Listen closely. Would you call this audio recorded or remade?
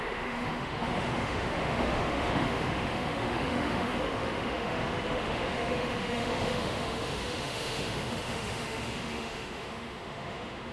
remade